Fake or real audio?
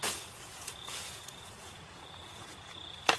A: fake